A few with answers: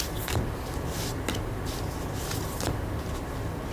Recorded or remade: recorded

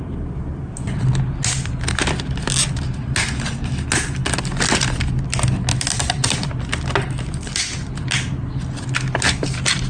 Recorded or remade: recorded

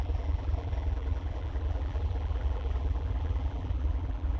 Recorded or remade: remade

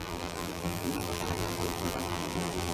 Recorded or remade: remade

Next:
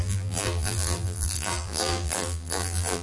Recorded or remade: remade